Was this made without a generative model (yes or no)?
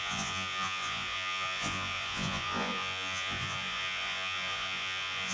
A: no